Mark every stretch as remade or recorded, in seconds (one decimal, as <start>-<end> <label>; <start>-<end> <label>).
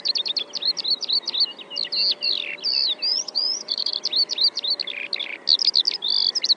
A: 0.0-3.1 recorded; 3.1-3.9 remade; 3.9-6.6 recorded